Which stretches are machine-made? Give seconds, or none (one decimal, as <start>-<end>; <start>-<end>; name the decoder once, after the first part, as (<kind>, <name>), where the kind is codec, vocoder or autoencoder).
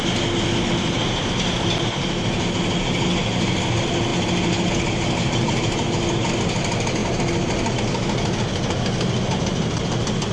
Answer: none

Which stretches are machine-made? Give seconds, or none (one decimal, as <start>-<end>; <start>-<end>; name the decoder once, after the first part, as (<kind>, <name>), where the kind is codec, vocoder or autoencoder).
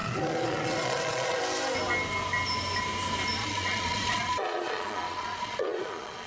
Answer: 0.0-1.4 (vocoder, Vocos); 3.4-6.3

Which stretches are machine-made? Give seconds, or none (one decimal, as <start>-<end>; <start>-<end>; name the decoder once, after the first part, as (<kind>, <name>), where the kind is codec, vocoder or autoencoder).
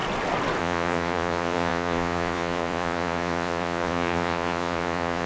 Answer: 0.6-5.3 (vocoder, Vocos)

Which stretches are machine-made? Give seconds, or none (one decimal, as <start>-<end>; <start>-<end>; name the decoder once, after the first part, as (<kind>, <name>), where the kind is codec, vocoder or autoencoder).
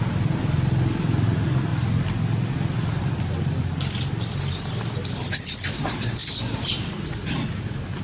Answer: 1.7-4.8 (vocoder, BigVGAN v2); 6.2-6.7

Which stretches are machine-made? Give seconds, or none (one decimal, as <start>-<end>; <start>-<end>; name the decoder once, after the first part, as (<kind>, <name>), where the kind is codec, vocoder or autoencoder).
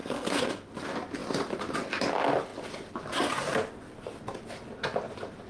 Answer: 0.0-0.7 (codec, SNAC)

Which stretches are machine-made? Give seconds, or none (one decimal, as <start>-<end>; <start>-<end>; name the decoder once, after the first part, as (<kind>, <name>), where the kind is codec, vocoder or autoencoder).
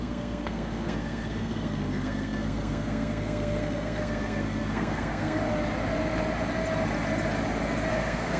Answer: 0.0-5.5 (codec, SNAC); 7.9-8.4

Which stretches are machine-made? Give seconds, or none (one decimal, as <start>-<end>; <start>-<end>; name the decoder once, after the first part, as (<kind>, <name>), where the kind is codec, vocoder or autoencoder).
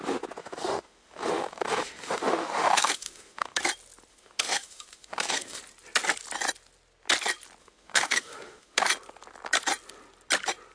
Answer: 0.4-3.6 (autoencoder, DAC-VAE); 4.1-5.6; 7.6-8.8